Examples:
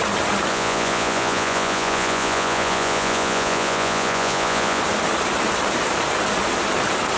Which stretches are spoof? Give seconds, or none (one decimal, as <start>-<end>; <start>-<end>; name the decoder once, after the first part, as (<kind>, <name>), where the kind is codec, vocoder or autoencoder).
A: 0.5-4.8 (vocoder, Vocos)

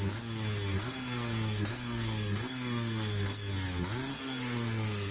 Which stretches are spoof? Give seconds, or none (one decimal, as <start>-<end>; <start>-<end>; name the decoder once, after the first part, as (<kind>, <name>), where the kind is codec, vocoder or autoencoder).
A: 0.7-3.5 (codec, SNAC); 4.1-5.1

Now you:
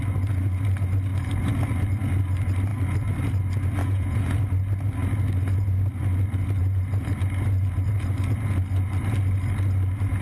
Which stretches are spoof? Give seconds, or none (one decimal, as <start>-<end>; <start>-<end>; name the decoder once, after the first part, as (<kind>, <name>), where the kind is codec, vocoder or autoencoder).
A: 3.8-4.4 (vocoder, Vocos)